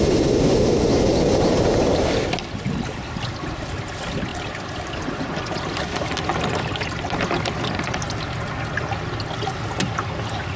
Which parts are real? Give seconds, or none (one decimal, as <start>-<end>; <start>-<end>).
0.0-4.3; 5.4-10.6